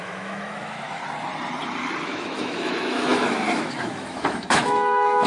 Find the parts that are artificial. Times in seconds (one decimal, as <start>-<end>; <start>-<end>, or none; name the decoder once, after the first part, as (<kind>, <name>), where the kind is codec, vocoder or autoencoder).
0.0-1.0 (autoencoder, DAC-VAE); 2.0-5.3